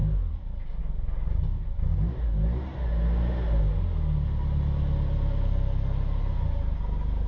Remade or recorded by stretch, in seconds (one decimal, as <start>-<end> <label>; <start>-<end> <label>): 0.0-7.3 recorded